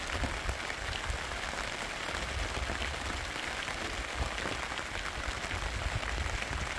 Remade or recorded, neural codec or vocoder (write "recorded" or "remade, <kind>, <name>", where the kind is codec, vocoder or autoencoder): recorded